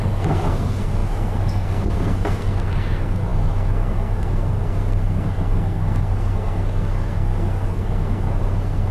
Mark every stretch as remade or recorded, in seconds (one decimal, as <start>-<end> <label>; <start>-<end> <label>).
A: 0.0-8.9 remade